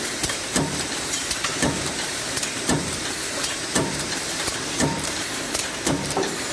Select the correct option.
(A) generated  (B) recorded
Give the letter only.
A